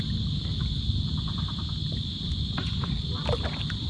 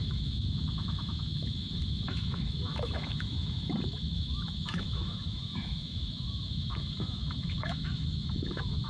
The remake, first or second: second